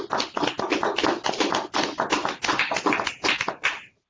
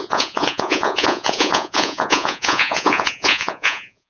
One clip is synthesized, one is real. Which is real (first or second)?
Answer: first